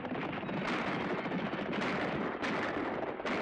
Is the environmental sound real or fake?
fake